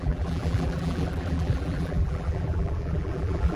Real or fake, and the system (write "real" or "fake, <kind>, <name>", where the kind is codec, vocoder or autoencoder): fake, vocoder, BigVGAN v2